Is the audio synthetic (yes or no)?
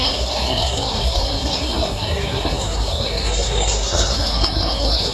yes